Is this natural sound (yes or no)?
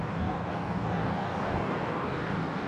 no